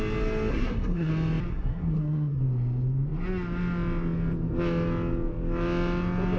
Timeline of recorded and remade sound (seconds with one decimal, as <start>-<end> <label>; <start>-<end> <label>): 0.0-0.5 recorded; 0.5-1.1 remade; 1.1-1.5 recorded; 1.5-2.4 remade; 2.4-6.4 recorded